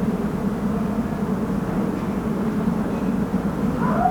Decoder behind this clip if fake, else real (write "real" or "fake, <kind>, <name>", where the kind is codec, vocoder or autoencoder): real